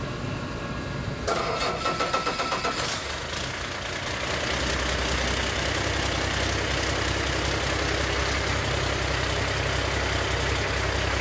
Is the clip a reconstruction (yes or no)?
no